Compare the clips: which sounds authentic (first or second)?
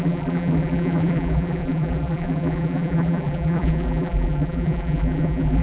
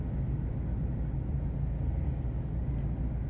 second